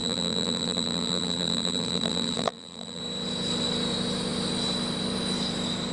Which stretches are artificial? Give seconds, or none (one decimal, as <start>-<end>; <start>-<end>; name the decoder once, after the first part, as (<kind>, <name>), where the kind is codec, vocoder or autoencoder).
0.0-3.0 (vocoder, BigVGAN v2)